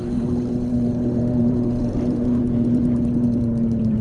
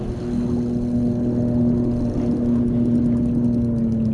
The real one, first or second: second